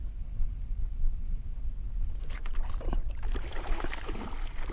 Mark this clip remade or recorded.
recorded